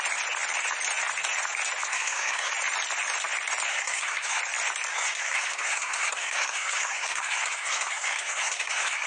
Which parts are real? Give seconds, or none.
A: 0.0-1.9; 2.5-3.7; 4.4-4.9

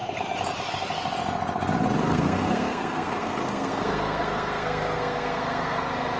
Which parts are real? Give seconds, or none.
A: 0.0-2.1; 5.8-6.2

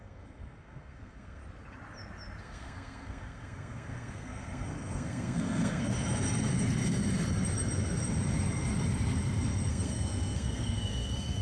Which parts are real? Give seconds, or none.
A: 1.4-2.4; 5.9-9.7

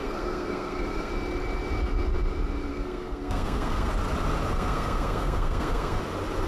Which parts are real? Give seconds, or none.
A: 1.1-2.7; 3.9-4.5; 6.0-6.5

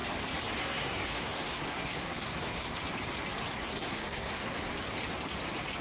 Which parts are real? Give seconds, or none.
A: 0.0-0.6; 2.8-3.5; 4.7-5.8

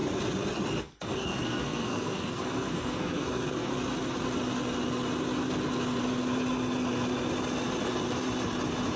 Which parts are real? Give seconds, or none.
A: 0.0-0.8; 3.7-9.0